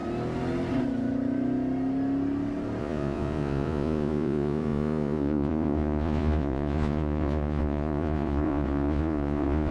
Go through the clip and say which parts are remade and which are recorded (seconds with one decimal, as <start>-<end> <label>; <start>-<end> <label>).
0.0-2.8 recorded; 2.8-9.7 remade